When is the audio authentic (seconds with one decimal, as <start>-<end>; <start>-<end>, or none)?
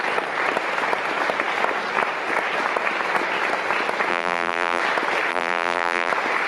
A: 0.0-4.1; 4.8-5.3; 6.1-6.5